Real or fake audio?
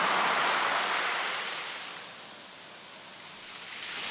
real